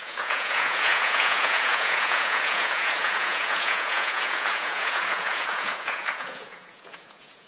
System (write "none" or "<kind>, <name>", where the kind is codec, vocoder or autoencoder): vocoder, Vocos